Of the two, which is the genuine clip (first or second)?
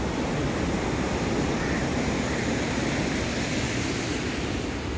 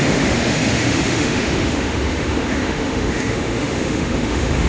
first